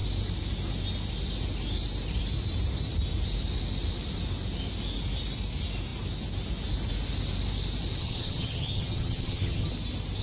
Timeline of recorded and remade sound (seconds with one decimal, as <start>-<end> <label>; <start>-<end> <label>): 0.0-8.0 recorded; 8.0-9.7 remade; 9.7-10.2 recorded